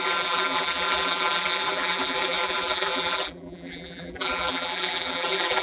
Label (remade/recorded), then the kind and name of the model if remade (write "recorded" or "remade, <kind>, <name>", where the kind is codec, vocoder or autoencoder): remade, vocoder, BigVGAN v2